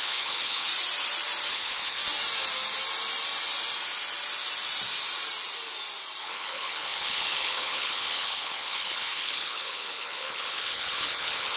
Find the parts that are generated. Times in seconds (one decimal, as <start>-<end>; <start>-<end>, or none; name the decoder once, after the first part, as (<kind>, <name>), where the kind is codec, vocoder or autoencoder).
0.0-0.7 (codec, HILCodec); 1.5-2.0; 6.2-11.6

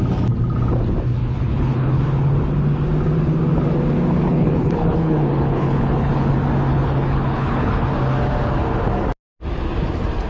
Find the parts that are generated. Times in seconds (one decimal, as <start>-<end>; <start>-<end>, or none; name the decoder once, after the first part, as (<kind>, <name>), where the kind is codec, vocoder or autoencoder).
1.2-2.0 (codec, HILCodec); 4.3-6.3; 6.7-7.9

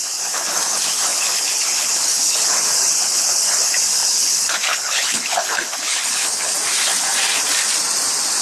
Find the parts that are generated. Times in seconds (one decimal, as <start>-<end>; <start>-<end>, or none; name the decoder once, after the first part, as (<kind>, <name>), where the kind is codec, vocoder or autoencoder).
0.0-6.5 (codec, HILCodec)

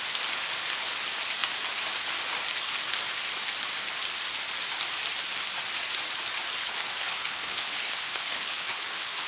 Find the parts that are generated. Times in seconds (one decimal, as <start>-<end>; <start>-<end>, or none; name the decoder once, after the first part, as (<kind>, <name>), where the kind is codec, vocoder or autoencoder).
6.6-9.3 (codec, HILCodec)

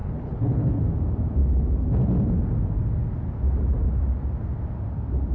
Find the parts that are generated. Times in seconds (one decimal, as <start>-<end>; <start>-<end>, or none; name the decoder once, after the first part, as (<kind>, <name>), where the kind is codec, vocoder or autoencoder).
0.0-0.8 (codec, HILCodec)

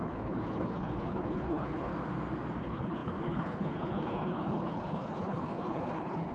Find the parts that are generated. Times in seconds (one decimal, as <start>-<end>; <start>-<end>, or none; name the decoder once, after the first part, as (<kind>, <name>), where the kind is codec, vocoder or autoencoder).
0.0-1.9 (codec, HILCodec); 2.6-6.3

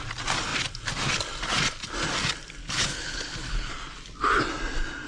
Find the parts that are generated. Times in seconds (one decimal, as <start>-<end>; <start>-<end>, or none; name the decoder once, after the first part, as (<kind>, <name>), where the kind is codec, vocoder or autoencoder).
2.6-3.7 (codec, HILCodec)